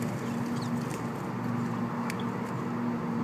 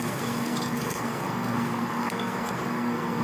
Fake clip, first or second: second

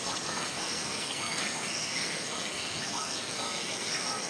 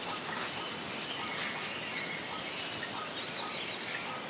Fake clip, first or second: first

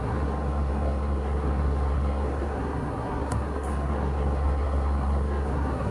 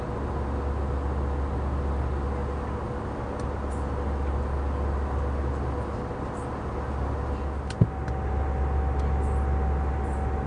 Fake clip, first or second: first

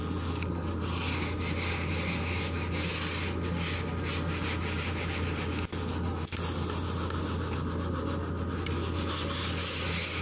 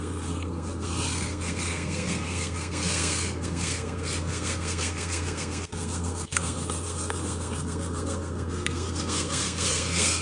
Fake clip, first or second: second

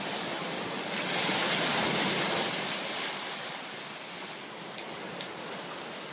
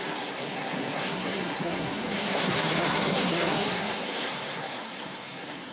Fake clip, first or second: second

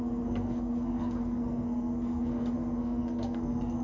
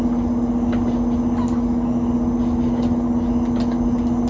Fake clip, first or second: first